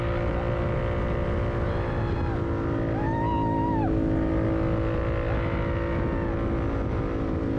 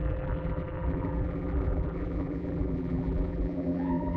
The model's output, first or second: second